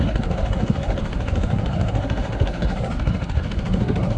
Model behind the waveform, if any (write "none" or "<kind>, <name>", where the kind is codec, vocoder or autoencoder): codec, SNAC